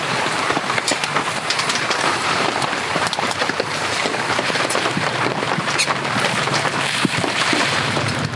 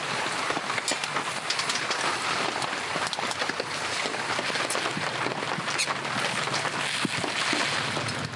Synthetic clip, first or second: first